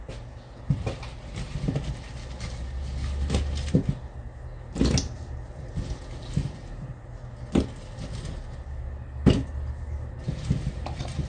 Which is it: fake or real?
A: real